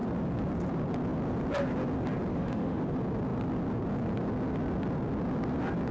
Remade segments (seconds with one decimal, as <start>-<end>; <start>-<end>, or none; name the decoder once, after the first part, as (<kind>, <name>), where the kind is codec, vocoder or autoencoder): 2.3-2.8 (autoencoder, DAC-VAE)